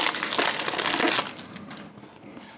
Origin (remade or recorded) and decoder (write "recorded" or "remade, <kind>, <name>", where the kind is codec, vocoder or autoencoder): recorded